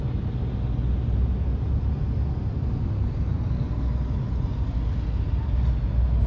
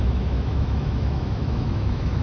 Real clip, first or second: first